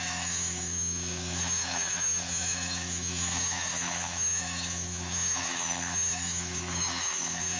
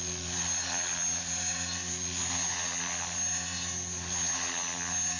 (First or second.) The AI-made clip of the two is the first